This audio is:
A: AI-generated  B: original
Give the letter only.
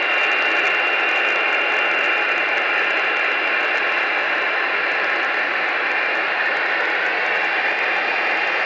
B